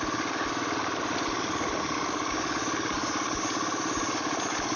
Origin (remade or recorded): recorded